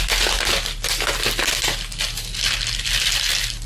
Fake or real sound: real